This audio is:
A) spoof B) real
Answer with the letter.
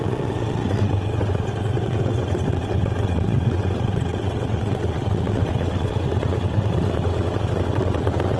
A